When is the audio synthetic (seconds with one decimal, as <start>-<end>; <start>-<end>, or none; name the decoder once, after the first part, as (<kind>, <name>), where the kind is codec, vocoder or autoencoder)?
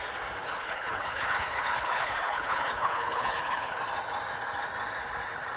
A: 0.4-3.8 (codec, HILCodec)